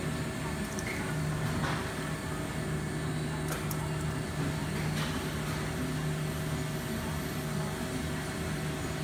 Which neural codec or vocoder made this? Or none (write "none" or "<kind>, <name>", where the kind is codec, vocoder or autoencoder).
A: none